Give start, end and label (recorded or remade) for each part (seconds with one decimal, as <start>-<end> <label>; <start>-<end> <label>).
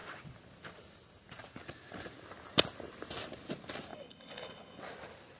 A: 0.0-3.9 recorded; 3.9-4.8 remade; 4.8-5.4 recorded